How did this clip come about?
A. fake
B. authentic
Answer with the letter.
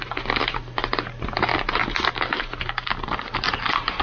B